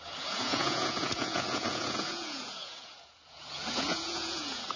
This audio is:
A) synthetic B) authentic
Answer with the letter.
A